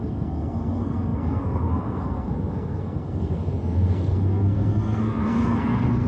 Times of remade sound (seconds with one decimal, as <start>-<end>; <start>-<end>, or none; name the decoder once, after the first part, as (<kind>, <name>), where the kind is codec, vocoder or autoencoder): 0.0-6.1 (codec, SNAC)